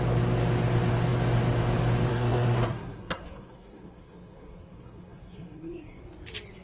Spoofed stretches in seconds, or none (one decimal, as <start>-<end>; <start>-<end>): 2.1-6.0